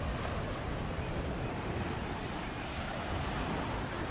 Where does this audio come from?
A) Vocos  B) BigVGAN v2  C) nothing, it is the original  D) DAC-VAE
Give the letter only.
C